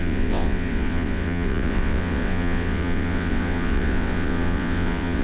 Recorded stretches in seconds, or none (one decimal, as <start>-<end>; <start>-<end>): none